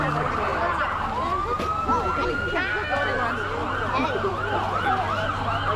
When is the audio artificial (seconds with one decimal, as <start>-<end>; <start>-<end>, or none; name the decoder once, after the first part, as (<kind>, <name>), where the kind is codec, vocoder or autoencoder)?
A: none